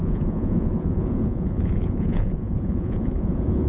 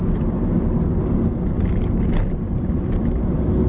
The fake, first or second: first